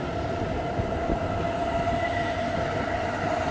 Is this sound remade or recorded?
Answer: recorded